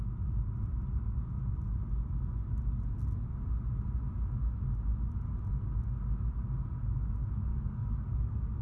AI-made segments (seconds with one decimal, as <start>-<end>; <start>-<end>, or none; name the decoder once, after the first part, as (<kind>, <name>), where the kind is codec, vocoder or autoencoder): 7.5-8.6 (codec, DAC)